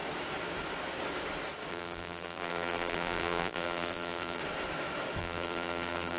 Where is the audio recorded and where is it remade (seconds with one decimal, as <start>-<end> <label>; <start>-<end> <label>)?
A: 0.0-1.7 recorded; 1.7-4.4 remade; 4.4-5.2 recorded; 5.2-6.2 remade